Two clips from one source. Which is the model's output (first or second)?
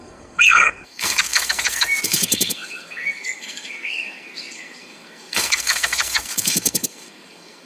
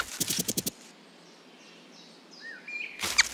first